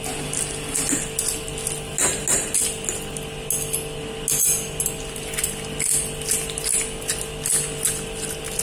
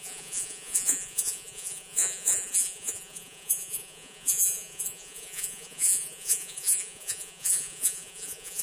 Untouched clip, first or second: first